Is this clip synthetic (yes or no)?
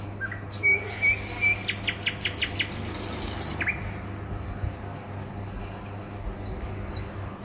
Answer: no